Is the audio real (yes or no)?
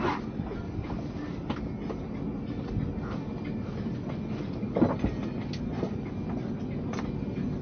yes